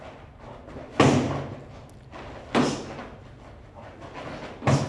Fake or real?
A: real